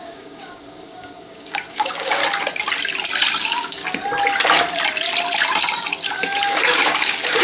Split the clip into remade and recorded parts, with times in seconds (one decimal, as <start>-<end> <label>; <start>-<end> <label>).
0.0-2.2 remade; 2.2-3.3 recorded; 3.3-3.8 remade; 3.8-6.1 recorded; 6.1-7.4 remade